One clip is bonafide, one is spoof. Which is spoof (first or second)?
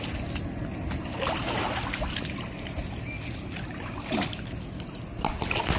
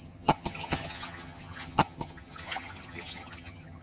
second